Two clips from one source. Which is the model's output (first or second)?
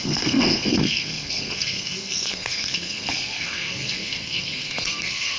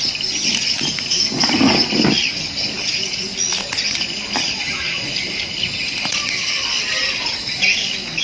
first